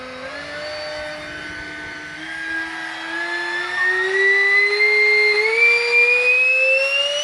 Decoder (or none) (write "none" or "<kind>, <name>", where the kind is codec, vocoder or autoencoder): none